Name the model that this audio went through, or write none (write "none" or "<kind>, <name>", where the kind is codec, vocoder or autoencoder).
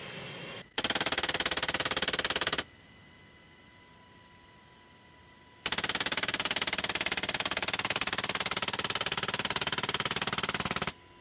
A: none